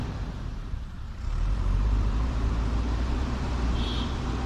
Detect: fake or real fake